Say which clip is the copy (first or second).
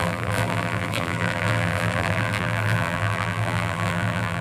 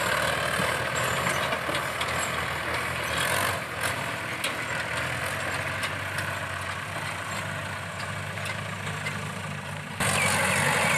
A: first